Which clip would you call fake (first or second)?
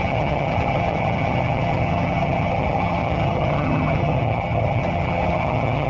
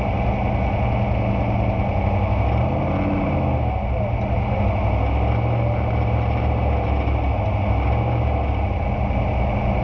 first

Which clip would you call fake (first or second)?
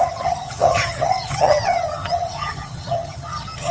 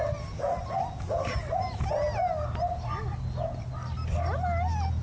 first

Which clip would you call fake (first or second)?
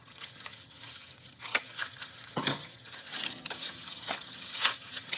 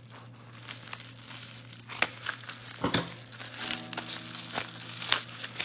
first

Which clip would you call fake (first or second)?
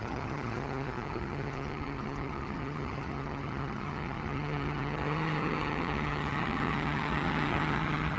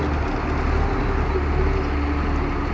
first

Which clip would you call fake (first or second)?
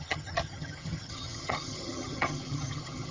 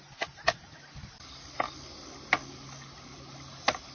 first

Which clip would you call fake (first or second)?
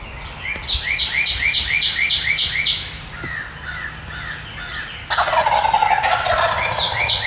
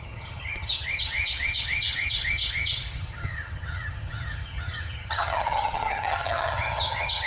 second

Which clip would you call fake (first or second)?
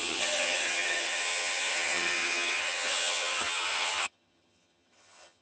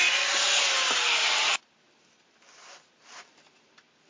first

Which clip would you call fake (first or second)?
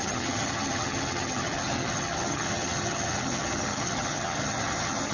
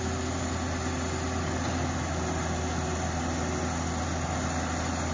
first